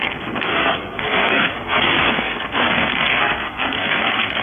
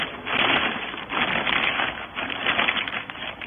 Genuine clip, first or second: second